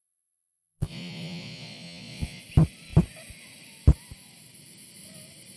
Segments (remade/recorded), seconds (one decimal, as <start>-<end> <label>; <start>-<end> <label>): 0.0-2.4 remade; 2.4-5.6 recorded